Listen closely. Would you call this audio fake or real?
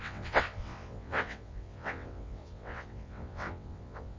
fake